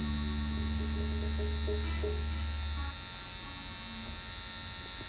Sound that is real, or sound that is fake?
real